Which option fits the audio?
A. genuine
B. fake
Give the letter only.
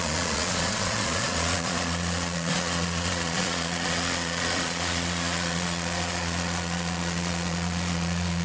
B